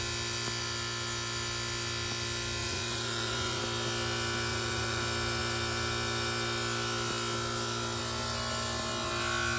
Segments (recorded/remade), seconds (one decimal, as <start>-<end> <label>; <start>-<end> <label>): 0.0-2.6 recorded; 2.6-3.6 remade; 3.6-4.5 recorded; 4.5-5.0 remade; 5.0-9.6 recorded